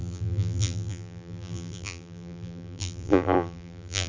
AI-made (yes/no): yes